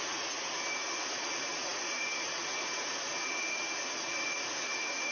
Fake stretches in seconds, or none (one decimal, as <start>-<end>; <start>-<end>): 0.0-5.1